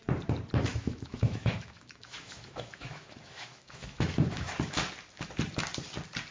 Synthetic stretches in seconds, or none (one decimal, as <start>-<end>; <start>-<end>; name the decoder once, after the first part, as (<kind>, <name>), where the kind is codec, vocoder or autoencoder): 0.7-4.5 (autoencoder, DAC-VAE)